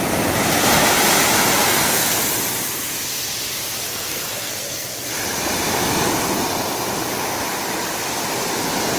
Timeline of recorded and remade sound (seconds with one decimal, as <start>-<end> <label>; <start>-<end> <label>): 0.0-1.6 recorded; 1.6-2.2 remade; 2.2-3.9 recorded; 3.9-5.1 remade; 5.1-9.0 recorded